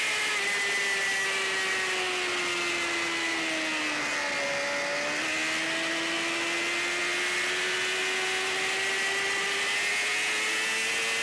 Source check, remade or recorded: recorded